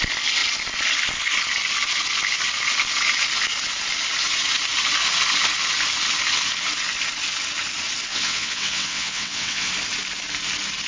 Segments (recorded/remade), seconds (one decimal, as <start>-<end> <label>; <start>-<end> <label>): 0.0-8.1 recorded; 8.1-9.7 remade; 9.7-10.9 recorded